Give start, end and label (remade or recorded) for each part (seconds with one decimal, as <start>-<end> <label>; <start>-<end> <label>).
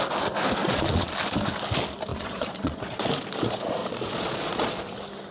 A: 0.0-0.6 recorded; 0.6-1.1 remade; 1.1-2.1 recorded; 2.1-3.1 remade; 3.1-3.8 recorded; 3.8-4.8 remade; 4.8-5.3 recorded